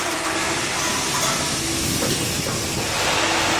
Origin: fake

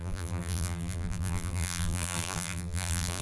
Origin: fake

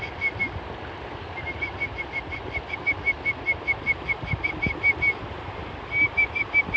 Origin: real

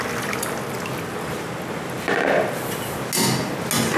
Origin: real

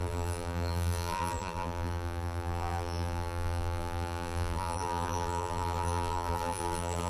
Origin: fake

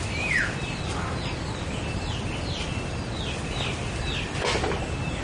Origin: fake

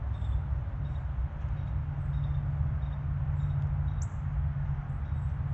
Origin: real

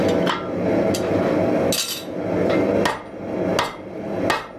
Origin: real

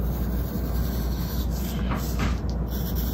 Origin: real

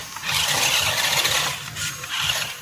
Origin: fake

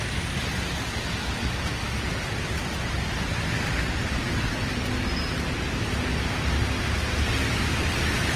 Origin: real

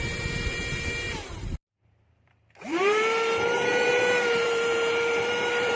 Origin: fake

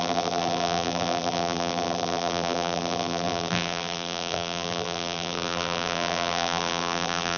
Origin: fake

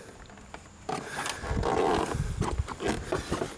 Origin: real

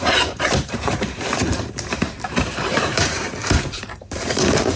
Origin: fake